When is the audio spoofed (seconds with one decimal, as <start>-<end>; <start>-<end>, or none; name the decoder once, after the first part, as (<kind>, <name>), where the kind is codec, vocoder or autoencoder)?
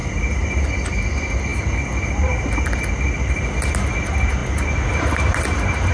none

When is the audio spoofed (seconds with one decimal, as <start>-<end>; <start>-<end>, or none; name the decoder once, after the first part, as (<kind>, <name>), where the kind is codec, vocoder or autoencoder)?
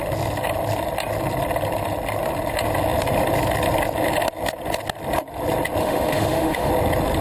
5.8-6.7 (autoencoder, DAC-VAE)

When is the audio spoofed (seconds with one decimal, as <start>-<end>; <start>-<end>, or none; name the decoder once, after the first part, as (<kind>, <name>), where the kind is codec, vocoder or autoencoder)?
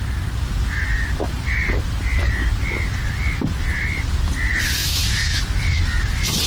4.8-5.4 (autoencoder, DAC-VAE)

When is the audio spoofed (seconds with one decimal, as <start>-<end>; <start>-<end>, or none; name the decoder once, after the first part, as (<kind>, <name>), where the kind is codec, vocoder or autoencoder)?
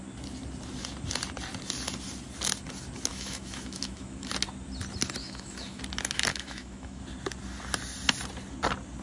3.1-4.3 (autoencoder, DAC-VAE); 5.2-5.8; 6.3-7.0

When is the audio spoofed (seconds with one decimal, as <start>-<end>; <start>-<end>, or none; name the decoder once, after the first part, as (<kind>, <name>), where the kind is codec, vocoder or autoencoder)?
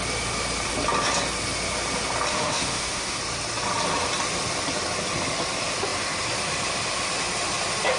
2.3-3.2 (autoencoder, DAC-VAE)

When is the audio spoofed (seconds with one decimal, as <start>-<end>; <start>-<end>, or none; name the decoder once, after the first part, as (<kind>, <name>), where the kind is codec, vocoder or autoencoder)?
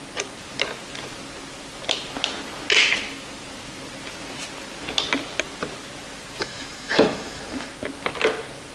6.4-7.7 (autoencoder, DAC-VAE)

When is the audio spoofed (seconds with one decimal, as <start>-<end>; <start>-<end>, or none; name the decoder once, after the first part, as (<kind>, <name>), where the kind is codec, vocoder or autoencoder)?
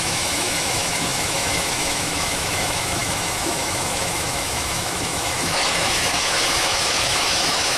0.0-7.8 (autoencoder, DAC-VAE)